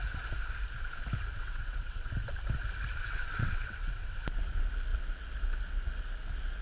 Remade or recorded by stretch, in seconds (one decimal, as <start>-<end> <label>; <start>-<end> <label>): 0.0-1.3 recorded; 1.3-2.1 remade; 2.1-3.0 recorded; 3.0-4.4 remade; 4.4-6.6 recorded